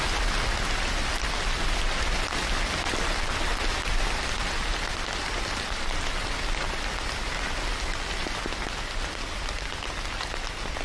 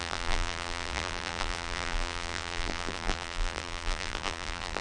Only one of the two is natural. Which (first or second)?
first